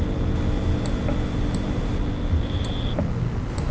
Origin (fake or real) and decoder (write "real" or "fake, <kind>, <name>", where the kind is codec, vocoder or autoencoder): real